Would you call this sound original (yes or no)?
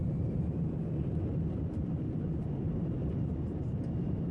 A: no